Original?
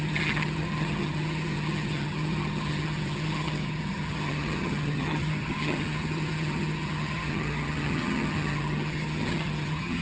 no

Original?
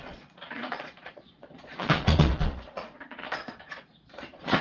no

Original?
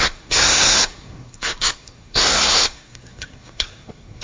no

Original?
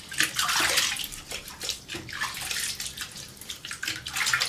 yes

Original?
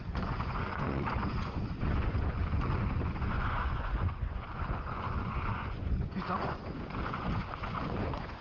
no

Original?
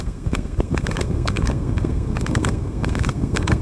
no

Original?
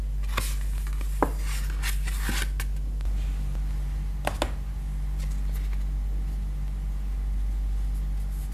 yes